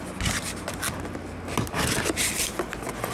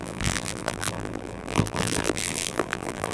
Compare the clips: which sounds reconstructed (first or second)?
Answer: second